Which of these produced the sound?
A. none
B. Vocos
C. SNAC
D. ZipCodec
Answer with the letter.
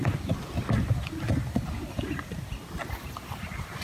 A